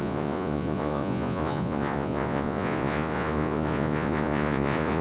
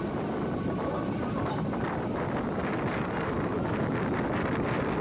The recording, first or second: second